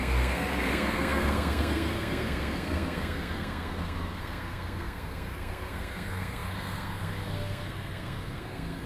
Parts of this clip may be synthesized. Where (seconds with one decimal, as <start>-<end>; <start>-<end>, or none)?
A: 0.0-8.9